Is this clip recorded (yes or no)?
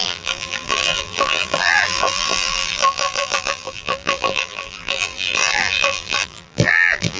no